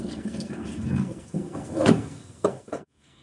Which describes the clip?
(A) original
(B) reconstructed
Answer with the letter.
B